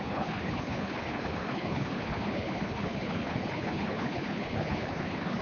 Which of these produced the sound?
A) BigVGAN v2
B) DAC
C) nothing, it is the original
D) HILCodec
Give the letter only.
D